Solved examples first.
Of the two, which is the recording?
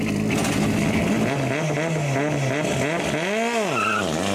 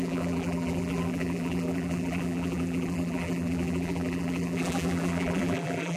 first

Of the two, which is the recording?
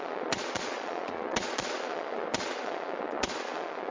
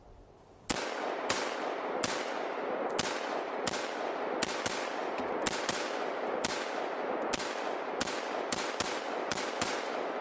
second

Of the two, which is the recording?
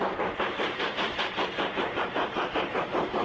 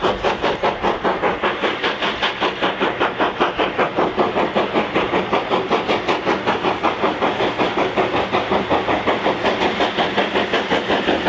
second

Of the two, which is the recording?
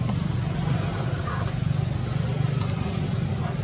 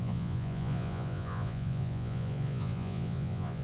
first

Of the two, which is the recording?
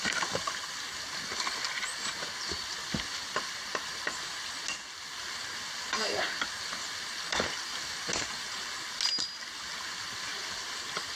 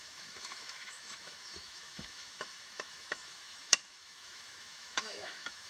first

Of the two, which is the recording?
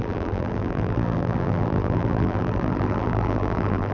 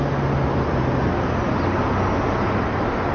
second